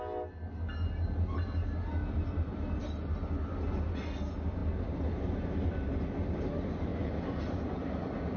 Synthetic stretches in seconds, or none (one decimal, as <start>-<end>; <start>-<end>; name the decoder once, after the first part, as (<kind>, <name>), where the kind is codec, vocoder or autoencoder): 2.0-2.9 (vocoder, BigVGAN v2); 6.9-7.6